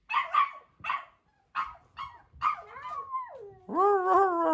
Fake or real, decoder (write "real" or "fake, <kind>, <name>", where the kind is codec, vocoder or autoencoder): real